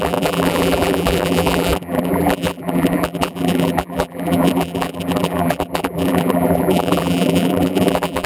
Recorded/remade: remade